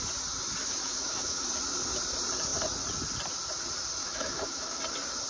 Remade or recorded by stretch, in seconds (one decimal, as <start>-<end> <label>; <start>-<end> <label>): 0.0-0.6 recorded; 0.6-1.5 remade; 1.5-4.0 recorded; 4.0-4.8 remade; 4.8-5.3 recorded